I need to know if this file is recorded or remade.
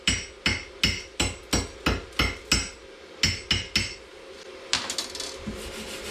recorded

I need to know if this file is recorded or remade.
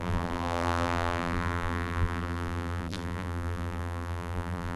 remade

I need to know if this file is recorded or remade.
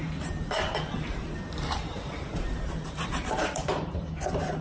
remade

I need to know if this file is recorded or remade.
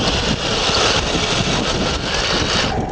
recorded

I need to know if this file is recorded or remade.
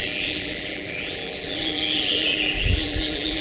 remade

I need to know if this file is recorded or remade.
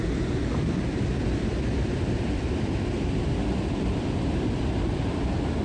remade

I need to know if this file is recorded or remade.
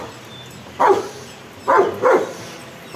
recorded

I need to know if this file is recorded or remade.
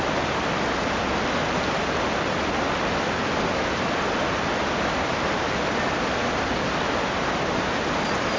recorded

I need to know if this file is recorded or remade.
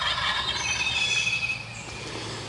recorded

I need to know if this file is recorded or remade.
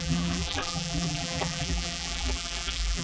remade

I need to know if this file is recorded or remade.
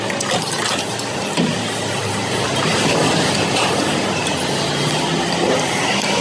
recorded